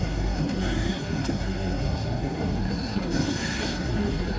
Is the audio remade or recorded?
remade